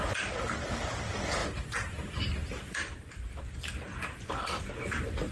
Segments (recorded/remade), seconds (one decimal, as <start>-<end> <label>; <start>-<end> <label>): 0.0-5.3 recorded